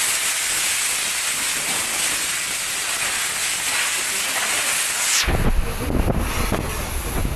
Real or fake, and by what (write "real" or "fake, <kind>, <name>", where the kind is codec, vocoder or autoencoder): real